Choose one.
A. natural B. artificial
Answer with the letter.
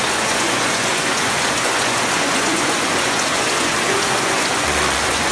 B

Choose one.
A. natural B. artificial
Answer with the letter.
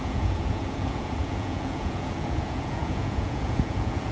B